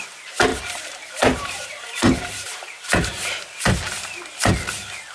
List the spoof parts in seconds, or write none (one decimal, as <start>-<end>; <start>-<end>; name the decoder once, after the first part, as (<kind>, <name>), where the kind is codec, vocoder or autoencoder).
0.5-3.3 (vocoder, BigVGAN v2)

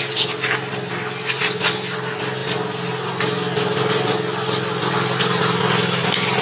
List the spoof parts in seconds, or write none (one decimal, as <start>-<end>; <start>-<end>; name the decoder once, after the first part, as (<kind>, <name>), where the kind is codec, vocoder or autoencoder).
none

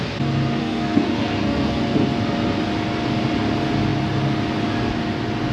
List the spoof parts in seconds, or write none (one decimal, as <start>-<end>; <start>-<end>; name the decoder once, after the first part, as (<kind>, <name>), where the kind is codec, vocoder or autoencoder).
0.6-1.8 (codec, SNAC)